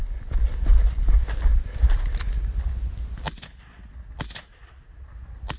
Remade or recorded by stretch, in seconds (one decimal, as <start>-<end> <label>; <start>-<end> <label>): 0.0-5.6 recorded